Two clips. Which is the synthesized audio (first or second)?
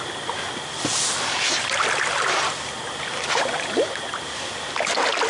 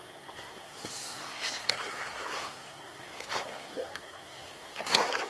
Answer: second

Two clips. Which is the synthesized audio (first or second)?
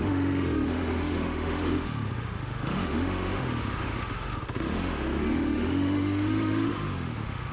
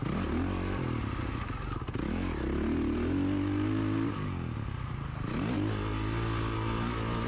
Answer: first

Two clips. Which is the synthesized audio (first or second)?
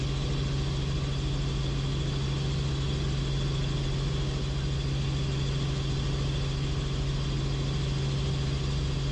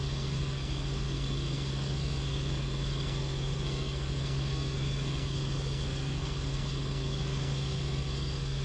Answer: second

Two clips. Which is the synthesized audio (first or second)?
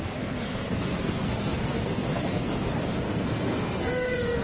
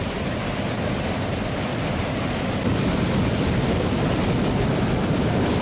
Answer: first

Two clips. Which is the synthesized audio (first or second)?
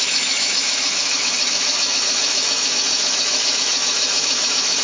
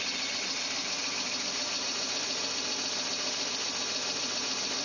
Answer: first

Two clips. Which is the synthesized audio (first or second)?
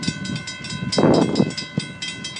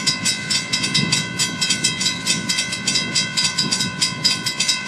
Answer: second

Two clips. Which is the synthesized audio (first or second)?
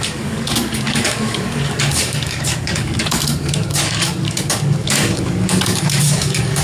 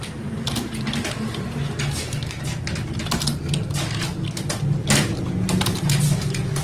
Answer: first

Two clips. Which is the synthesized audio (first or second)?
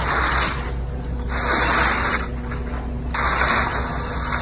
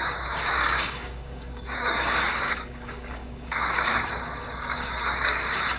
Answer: second